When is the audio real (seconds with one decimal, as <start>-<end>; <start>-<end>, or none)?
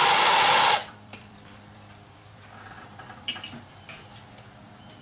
0.0-0.8; 3.3-5.0